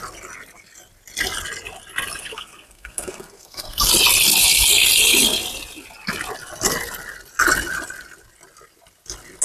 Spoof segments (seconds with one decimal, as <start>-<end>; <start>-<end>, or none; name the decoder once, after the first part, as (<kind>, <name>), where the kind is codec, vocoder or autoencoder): 2.2-3.9 (codec, SNAC)